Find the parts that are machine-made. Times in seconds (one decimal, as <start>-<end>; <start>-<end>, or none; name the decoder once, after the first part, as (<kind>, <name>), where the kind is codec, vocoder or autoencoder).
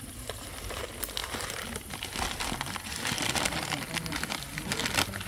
none